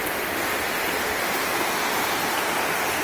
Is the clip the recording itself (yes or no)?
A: no